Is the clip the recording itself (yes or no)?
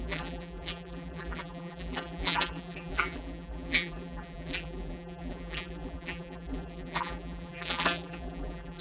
no